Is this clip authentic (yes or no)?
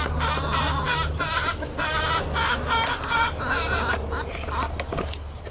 yes